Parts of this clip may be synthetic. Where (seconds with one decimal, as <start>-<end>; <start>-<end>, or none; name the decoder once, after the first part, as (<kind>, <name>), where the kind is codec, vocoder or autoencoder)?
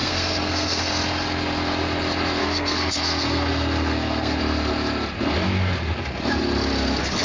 0.0-0.8 (codec, SNAC); 2.4-4.4